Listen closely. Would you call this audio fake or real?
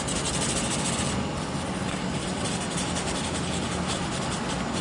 fake